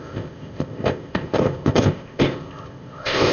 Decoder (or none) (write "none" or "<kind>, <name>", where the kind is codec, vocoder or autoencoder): codec, ZipCodec